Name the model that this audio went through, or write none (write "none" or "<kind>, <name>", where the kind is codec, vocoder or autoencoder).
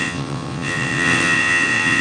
vocoder, WaveNeXt